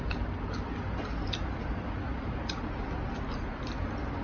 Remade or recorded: recorded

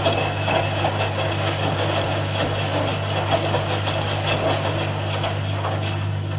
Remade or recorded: recorded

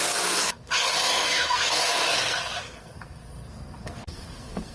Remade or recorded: remade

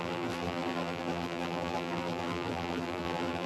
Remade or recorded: remade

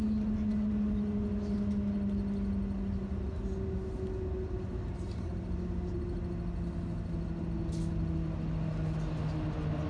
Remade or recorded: recorded